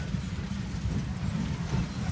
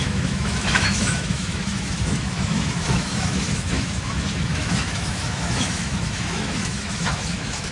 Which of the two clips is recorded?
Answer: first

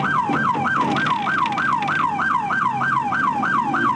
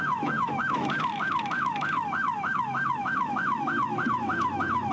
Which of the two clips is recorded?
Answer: first